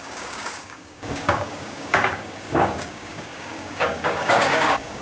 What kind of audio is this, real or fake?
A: fake